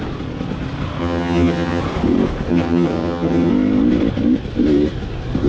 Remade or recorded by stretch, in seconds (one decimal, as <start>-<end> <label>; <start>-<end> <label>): 0.0-1.0 recorded; 1.0-1.8 remade; 1.8-2.5 recorded; 2.5-3.5 remade; 3.5-5.5 recorded